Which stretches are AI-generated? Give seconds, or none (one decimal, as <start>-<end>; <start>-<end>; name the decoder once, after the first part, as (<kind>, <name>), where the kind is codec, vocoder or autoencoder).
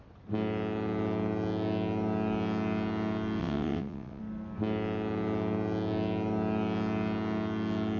3.4-4.2 (vocoder, WaveNeXt)